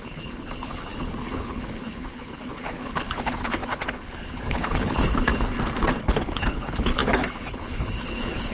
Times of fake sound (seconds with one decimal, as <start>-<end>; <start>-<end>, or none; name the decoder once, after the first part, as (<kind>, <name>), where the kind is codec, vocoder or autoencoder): 0.0-5.3 (codec, HILCodec); 6.0-8.5